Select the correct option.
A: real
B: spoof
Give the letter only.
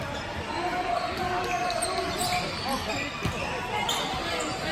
A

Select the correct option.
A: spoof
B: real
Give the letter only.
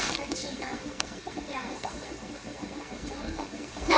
A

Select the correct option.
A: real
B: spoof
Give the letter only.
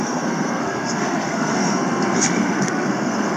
B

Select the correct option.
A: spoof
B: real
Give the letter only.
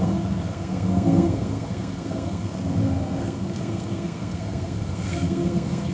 A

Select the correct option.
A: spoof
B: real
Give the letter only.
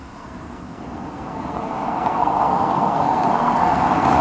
A